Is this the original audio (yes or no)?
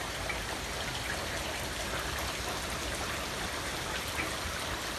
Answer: yes